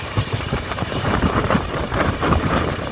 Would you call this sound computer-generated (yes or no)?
yes